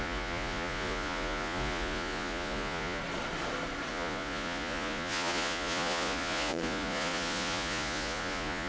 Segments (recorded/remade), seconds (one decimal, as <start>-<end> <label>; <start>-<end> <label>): 0.0-3.0 remade; 3.0-3.9 recorded; 3.9-8.7 remade